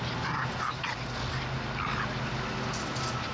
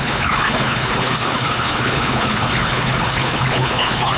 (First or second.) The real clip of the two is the first